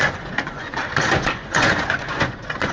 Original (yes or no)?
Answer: no